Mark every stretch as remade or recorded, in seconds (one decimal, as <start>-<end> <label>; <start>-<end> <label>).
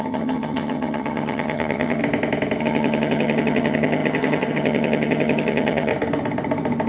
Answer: 0.0-2.0 remade; 2.0-2.6 recorded; 2.6-5.9 remade; 5.9-6.9 recorded